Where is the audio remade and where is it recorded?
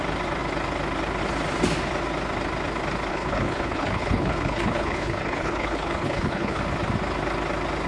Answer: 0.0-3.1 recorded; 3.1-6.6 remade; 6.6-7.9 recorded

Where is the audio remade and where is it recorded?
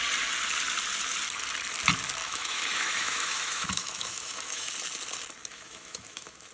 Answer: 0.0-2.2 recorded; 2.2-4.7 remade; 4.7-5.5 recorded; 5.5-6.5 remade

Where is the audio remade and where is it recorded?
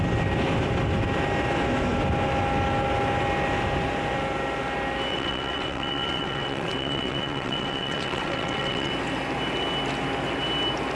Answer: 0.0-5.1 recorded; 5.1-8.9 remade; 8.9-11.0 recorded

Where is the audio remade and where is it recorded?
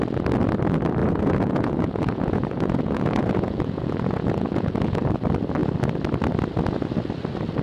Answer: 0.0-1.0 recorded; 1.0-5.0 remade; 5.0-7.6 recorded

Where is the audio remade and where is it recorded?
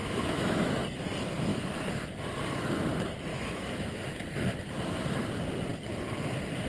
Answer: 0.0-0.7 remade; 0.7-3.3 recorded; 3.3-3.9 remade; 3.9-6.7 recorded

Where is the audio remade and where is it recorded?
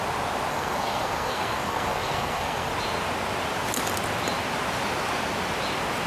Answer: 0.0-0.5 recorded; 0.5-2.7 remade; 2.7-6.1 recorded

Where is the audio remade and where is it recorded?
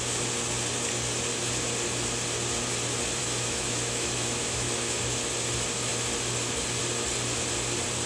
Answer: 0.0-3.2 recorded; 3.2-5.0 remade; 5.0-8.1 recorded